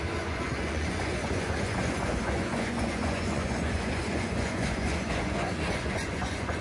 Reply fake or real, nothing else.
fake